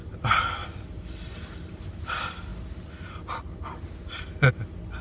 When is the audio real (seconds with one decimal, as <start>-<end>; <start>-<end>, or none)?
0.0-0.6; 2.0-5.0